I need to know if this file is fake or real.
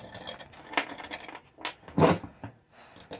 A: real